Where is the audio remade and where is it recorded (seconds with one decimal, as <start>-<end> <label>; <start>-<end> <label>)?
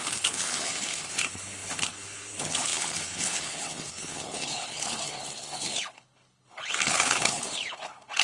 0.0-8.2 remade